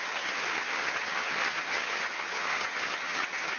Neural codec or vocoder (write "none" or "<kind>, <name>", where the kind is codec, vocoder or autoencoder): vocoder, HiFi-GAN